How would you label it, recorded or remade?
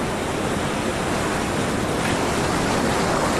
recorded